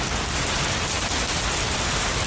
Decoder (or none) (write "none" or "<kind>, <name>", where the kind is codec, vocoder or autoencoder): none